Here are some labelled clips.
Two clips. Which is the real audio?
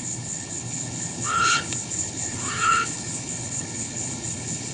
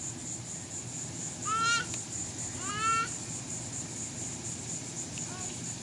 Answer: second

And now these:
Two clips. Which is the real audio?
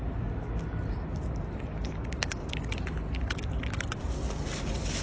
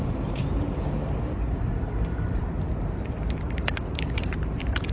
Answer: first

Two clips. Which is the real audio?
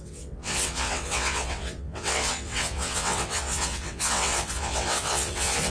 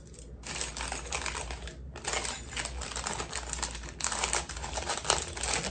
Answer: second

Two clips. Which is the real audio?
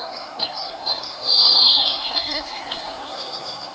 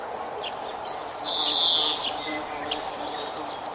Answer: second